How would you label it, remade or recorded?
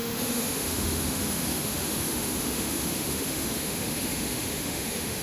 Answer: remade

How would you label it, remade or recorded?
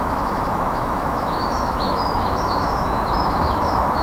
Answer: remade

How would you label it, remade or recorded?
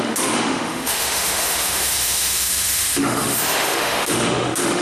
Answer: remade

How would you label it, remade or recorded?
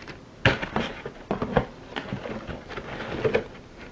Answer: recorded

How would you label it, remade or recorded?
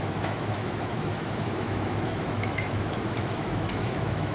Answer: remade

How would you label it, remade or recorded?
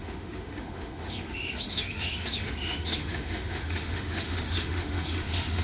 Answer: remade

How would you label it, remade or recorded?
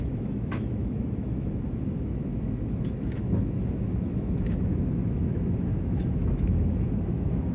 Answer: remade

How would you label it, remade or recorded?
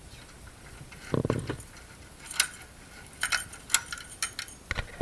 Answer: recorded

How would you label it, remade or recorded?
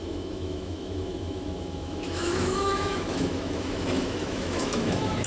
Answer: remade